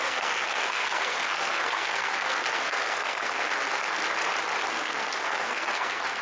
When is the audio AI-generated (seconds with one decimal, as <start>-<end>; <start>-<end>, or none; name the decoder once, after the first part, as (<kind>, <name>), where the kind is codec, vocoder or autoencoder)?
0.0-4.0 (codec, SNAC); 4.7-6.2